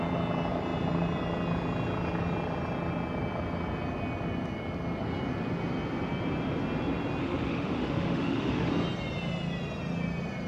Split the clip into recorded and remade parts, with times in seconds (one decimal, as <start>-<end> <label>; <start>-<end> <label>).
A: 0.0-7.2 recorded; 7.2-8.7 remade; 8.7-10.5 recorded

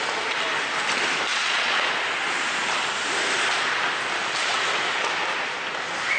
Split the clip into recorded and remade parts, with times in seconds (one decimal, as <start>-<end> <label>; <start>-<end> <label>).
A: 0.0-1.3 recorded; 1.3-1.9 remade; 1.9-6.2 recorded

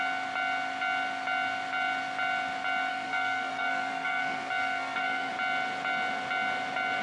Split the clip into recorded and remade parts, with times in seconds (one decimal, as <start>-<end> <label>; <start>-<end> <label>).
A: 0.0-2.9 recorded; 2.9-5.3 remade; 5.3-7.0 recorded

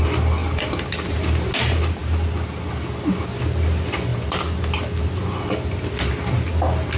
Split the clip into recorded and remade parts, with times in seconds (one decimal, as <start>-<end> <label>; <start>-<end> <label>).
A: 0.0-0.4 recorded; 0.4-1.2 remade; 1.2-7.0 recorded